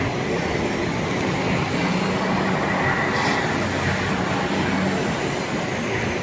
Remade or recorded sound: recorded